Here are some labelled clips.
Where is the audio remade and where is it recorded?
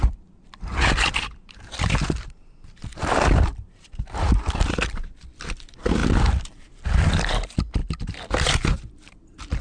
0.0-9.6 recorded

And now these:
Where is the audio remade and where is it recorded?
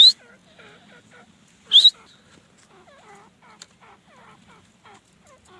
0.0-5.6 recorded